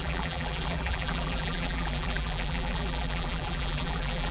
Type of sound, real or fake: fake